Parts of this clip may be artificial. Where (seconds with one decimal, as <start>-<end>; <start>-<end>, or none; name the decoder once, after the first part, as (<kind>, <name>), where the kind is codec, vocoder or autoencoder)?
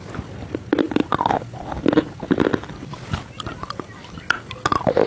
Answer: none